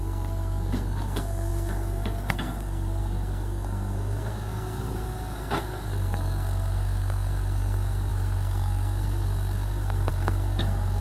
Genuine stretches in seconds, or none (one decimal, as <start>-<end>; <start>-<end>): none